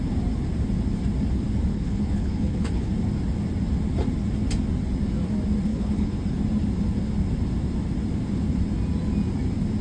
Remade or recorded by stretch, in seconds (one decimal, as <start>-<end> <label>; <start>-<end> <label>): 0.0-1.7 recorded; 1.7-2.9 remade; 2.9-5.7 recorded; 5.7-6.2 remade; 6.2-9.8 recorded